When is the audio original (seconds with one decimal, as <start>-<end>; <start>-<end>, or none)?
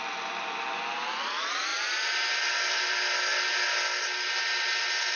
0.0-5.2